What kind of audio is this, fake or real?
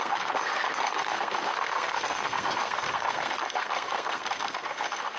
fake